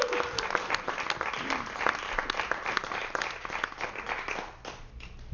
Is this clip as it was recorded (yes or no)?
yes